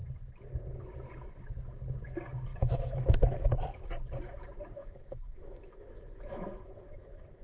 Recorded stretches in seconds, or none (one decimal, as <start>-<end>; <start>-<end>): 0.0-2.5; 3.5-4.8